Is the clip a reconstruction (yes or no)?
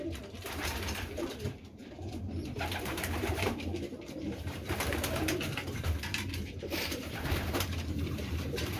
yes